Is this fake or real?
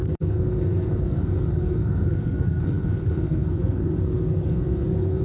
fake